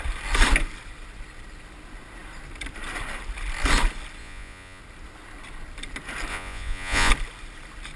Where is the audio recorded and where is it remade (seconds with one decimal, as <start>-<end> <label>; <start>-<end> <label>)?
0.0-4.2 recorded; 4.2-4.8 remade; 4.8-6.3 recorded; 6.3-7.1 remade; 7.1-8.0 recorded